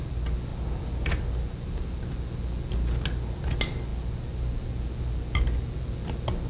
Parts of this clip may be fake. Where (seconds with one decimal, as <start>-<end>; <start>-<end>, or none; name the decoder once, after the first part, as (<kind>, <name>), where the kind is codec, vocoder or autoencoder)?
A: none